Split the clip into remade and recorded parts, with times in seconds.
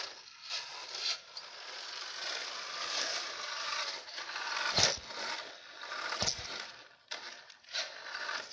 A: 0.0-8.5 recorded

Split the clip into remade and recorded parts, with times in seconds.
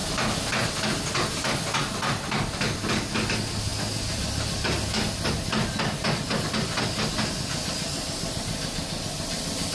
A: 0.0-9.7 recorded